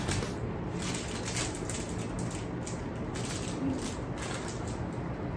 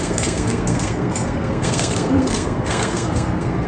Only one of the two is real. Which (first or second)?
first